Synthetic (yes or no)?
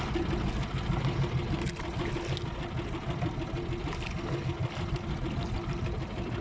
no